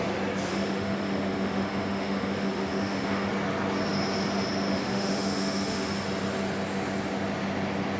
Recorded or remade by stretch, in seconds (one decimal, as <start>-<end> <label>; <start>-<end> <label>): 0.0-0.5 recorded; 0.5-3.3 remade; 3.3-4.7 recorded; 4.7-5.9 remade; 5.9-8.0 recorded